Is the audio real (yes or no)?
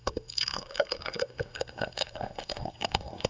no